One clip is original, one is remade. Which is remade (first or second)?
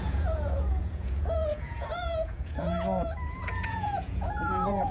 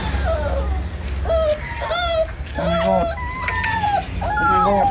first